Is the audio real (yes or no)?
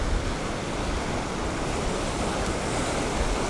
yes